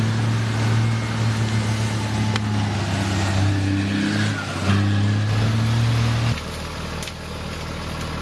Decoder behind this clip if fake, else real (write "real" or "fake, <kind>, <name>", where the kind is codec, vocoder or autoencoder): real